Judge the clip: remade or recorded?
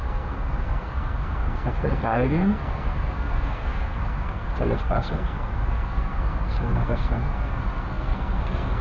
remade